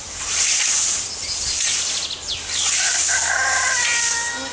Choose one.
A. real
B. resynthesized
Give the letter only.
A